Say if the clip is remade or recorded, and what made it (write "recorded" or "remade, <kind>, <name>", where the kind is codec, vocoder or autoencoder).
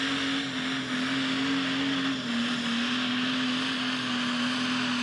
recorded